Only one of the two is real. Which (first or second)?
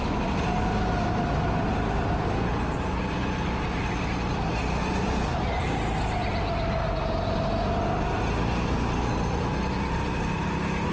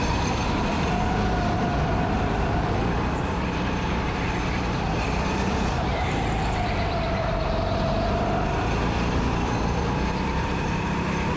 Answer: first